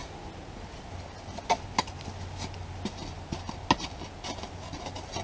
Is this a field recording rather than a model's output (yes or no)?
yes